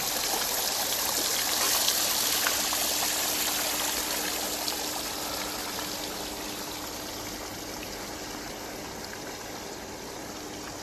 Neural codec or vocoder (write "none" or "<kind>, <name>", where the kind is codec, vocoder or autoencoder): none